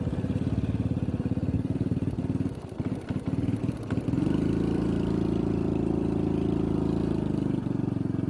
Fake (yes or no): no